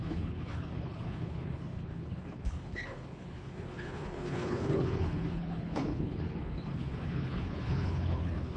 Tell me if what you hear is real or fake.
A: fake